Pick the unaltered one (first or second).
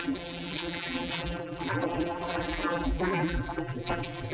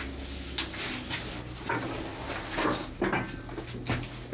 second